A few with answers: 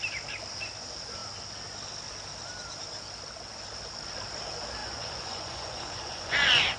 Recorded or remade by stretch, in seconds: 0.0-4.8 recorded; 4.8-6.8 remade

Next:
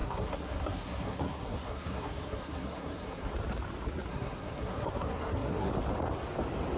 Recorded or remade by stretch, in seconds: 0.0-3.3 remade; 3.3-4.1 recorded; 4.1-5.7 remade; 5.7-6.8 recorded

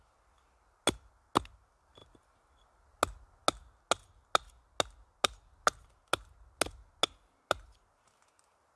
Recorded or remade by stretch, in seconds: 0.0-8.8 recorded

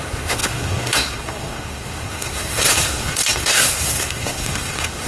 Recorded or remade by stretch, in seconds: 0.0-5.1 remade